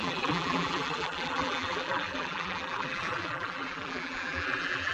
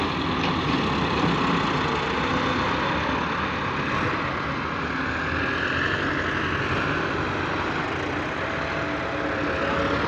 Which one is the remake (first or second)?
first